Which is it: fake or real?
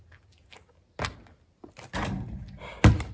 real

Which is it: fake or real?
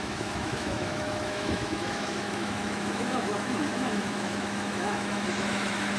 fake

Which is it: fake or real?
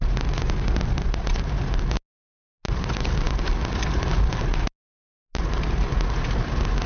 real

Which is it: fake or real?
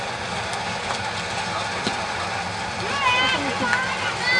real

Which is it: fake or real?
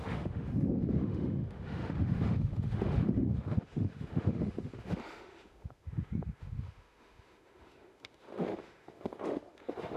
fake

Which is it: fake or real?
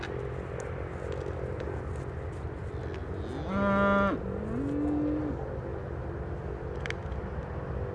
real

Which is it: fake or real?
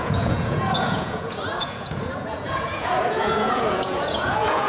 fake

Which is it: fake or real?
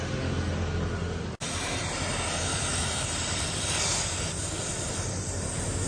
real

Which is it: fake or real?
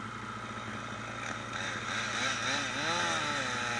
real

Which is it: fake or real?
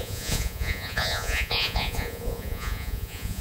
fake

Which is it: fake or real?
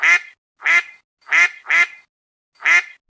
real